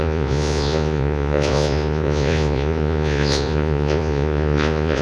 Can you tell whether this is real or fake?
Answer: fake